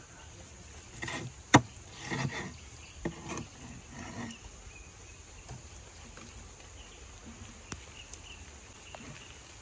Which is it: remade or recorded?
recorded